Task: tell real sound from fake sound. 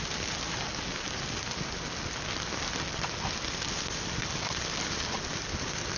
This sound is real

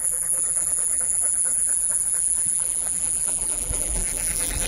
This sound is fake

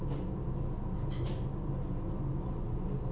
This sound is real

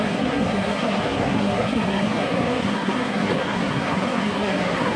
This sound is fake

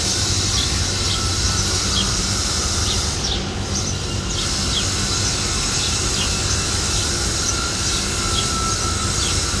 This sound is real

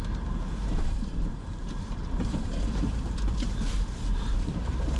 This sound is fake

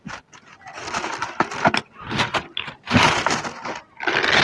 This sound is real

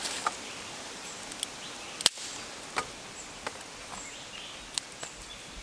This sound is real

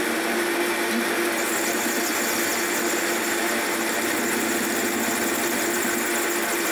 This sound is real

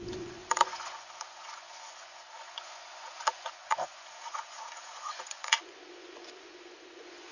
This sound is fake